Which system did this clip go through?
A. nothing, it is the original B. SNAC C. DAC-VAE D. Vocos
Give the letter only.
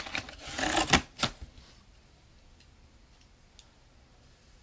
A